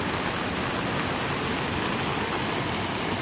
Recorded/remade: recorded